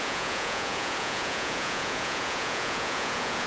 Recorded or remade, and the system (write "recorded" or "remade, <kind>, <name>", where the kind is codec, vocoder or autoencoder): remade, vocoder, Vocos